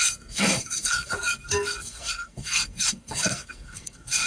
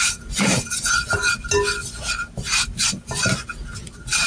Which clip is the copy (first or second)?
first